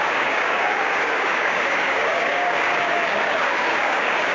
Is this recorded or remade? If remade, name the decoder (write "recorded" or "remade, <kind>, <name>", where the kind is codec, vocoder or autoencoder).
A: remade, codec, DAC